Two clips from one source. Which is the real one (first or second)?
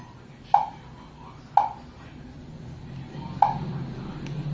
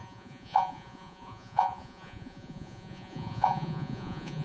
first